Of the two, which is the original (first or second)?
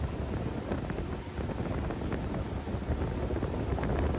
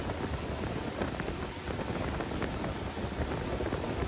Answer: first